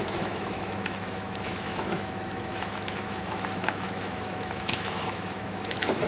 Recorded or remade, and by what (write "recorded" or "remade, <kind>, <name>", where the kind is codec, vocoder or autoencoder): remade, autoencoder, DAC-VAE